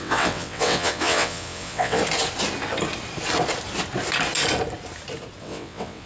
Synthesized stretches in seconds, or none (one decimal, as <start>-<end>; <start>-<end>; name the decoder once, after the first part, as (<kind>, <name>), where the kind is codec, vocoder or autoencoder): 0.0-2.0 (vocoder, WaveNeXt); 5.4-6.1